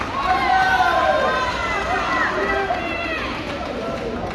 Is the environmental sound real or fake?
real